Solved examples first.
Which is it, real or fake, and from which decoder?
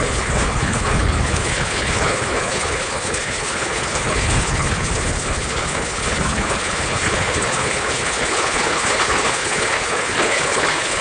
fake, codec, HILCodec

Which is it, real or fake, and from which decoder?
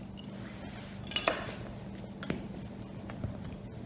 real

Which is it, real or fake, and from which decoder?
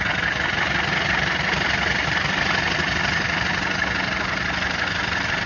real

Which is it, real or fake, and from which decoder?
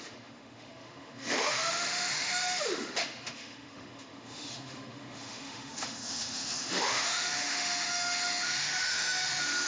fake, autoencoder, DAC-VAE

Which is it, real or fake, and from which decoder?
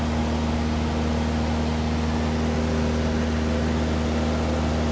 real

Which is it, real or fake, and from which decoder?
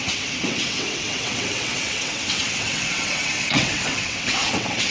fake, vocoder, WaveNeXt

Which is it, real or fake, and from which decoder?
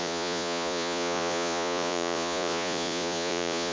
fake, vocoder, Vocos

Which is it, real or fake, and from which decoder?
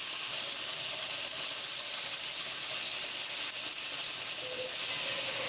real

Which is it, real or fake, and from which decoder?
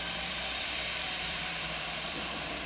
fake, vocoder, BigVGAN v2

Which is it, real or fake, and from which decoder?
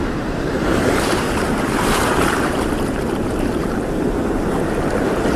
real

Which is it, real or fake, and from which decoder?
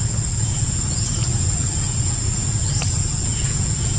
fake, vocoder, Vocos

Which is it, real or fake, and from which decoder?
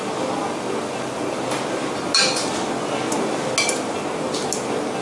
real